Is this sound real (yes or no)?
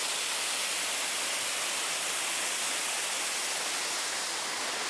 yes